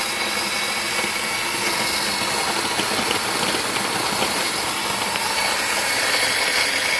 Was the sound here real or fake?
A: real